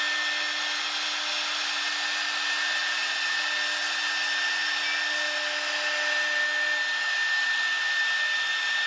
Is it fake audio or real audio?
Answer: real